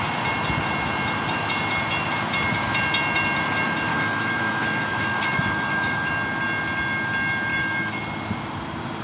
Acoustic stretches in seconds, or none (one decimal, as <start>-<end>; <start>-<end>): 0.0-3.9; 6.1-7.5; 8.0-9.0